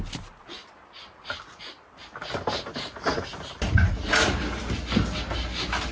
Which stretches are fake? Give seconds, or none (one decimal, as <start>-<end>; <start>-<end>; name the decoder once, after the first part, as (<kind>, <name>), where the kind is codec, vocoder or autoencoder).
none